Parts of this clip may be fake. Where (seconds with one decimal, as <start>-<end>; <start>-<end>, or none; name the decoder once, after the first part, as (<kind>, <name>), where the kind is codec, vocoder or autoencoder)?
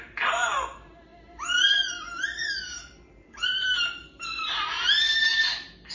0.0-5.1 (vocoder, BigVGAN v2)